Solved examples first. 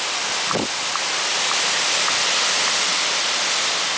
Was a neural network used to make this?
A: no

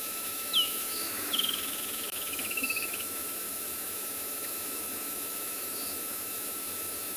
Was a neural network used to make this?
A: yes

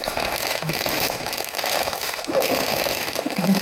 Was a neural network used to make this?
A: yes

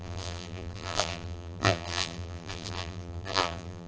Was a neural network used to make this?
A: yes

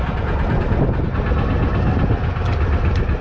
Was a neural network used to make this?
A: no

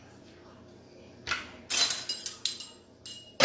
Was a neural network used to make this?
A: no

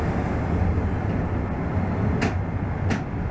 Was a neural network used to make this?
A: no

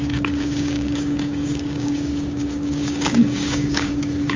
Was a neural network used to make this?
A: yes